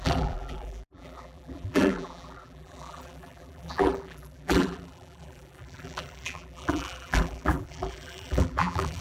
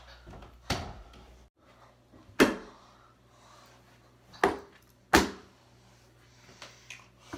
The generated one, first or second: first